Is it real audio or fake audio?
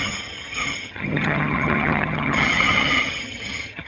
fake